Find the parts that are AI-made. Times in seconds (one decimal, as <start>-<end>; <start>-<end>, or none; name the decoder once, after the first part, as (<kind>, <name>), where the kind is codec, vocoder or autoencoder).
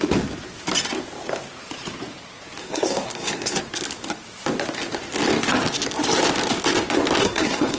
2.6-3.6 (codec, SNAC); 7.2-7.8